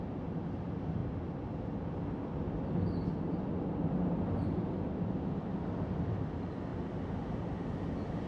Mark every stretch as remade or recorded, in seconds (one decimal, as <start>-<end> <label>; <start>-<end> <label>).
0.0-8.3 recorded